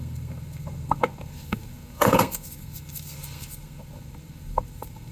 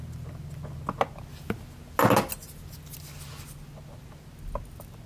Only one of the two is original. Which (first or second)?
second